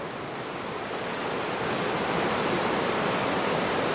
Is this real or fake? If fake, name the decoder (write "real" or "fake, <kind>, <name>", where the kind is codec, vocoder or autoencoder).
real